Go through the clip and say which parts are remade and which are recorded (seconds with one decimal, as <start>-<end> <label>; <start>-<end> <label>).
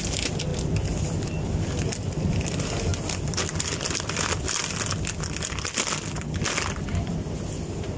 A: 0.0-8.0 recorded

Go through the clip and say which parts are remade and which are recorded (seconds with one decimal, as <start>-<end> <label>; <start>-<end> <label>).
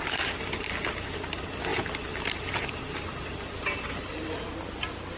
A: 0.0-5.2 recorded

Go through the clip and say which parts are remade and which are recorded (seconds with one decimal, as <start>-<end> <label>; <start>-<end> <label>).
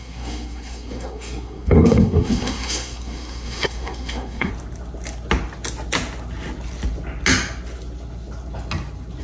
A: 0.0-4.5 remade; 4.5-9.2 recorded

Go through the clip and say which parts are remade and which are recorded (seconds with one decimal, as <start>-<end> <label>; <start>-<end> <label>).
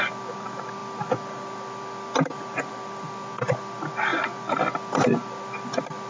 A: 0.0-6.1 recorded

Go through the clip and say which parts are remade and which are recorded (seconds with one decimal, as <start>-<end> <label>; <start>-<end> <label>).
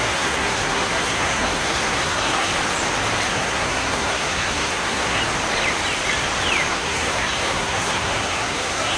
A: 0.0-2.5 remade; 2.5-3.3 recorded; 3.3-5.2 remade; 5.2-6.7 recorded; 6.7-9.0 remade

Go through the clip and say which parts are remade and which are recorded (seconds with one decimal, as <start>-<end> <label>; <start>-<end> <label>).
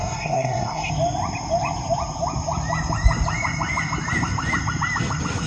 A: 0.0-0.9 remade; 0.9-5.5 recorded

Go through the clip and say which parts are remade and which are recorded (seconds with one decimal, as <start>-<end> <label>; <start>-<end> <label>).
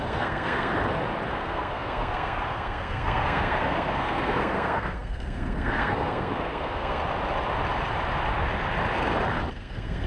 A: 0.0-0.7 remade; 0.7-1.3 recorded; 1.3-7.0 remade; 7.0-9.5 recorded; 9.5-10.1 remade